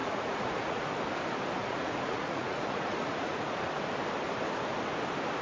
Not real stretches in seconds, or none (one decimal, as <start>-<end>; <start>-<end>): 0.0-0.9; 1.6-3.5